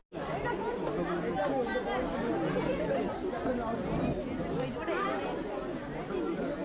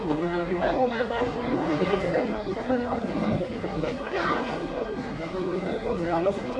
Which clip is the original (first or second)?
first